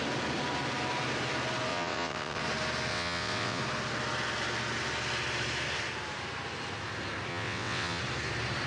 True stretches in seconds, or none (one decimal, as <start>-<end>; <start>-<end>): 0.0-1.7; 2.4-2.9; 3.6-7.3; 8.0-8.7